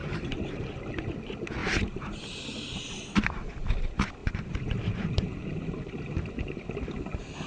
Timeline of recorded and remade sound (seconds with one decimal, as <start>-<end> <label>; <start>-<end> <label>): 0.0-0.9 remade; 0.9-1.6 recorded; 1.6-2.2 remade; 2.2-4.2 recorded; 4.2-6.8 remade; 6.8-7.5 recorded